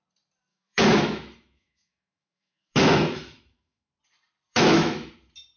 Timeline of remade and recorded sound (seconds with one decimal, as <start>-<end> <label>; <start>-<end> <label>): 0.0-0.5 recorded; 0.5-3.9 remade; 3.9-4.5 recorded; 4.5-5.1 remade; 5.1-5.6 recorded